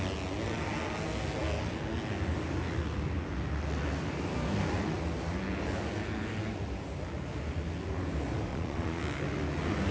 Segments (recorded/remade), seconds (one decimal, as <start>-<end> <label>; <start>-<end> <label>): 0.0-8.5 recorded; 8.5-9.0 remade; 9.0-9.9 recorded